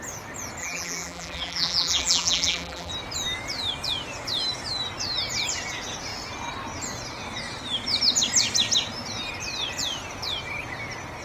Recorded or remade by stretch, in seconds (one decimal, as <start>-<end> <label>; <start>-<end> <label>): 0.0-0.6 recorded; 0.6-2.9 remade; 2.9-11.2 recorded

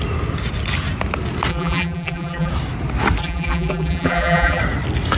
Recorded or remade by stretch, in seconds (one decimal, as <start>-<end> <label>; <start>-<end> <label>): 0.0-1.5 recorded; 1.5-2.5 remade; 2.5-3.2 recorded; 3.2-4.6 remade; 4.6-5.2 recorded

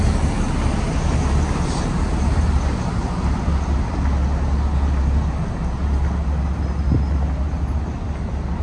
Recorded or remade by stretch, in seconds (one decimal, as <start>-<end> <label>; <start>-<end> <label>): 0.0-3.5 remade; 3.5-5.0 recorded; 5.0-5.8 remade; 5.8-8.6 recorded

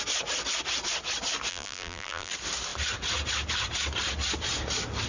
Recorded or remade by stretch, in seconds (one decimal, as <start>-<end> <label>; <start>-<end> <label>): 0.0-1.5 recorded; 1.5-2.3 remade; 2.3-5.1 recorded

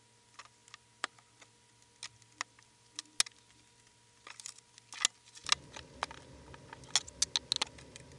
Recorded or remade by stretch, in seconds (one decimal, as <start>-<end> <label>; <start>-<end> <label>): 0.0-8.2 recorded